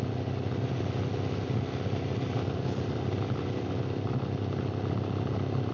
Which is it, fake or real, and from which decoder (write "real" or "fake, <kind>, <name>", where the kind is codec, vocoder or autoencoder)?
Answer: real